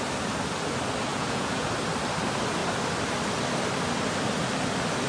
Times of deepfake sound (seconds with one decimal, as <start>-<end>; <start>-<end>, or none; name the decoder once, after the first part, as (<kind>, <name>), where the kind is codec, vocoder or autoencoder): 1.1-1.7 (vocoder, Vocos)